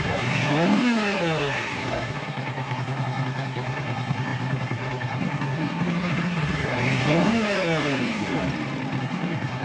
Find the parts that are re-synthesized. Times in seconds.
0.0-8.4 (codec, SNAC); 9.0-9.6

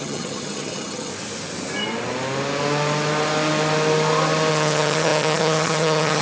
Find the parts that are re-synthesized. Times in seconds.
0.0-1.1 (vocoder, HiFi-GAN); 4.5-6.2

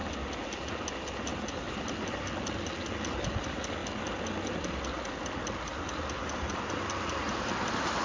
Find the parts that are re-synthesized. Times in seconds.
none

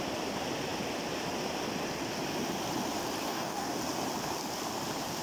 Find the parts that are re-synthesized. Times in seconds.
3.3-3.8 (codec, DAC)

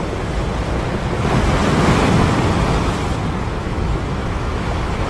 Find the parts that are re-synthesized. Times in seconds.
3.6-5.1 (autoencoder, DAC-VAE)

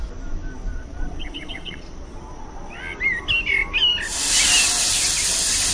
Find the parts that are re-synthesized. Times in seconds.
0.7-2.8 (vocoder, Vocos)

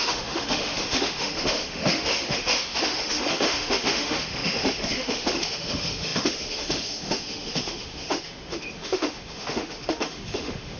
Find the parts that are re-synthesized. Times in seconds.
0.0-10.8 (autoencoder, DAC-VAE)

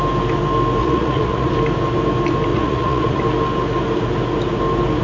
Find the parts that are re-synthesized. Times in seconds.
0.8-1.5 (vocoder, Vocos); 2.5-3.2